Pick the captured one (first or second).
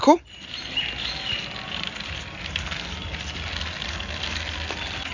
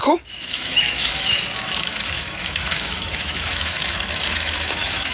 first